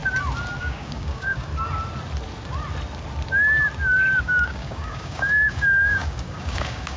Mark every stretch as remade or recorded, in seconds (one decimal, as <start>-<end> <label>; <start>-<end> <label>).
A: 0.0-0.6 recorded; 0.6-1.5 remade; 1.5-4.2 recorded; 4.2-7.0 remade